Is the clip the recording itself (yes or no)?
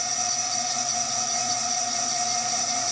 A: no